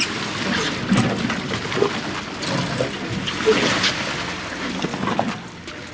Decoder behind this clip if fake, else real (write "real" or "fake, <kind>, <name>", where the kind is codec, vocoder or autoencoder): real